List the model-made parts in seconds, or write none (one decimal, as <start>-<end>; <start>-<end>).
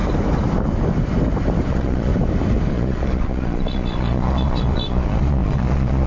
1.7-2.1; 2.7-6.1